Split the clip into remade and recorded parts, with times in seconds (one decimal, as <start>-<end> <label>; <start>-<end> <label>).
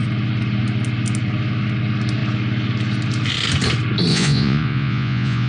0.0-4.1 recorded; 4.1-5.5 remade